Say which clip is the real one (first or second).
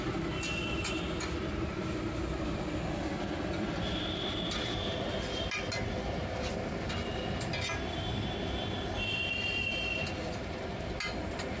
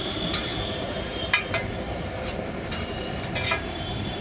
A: first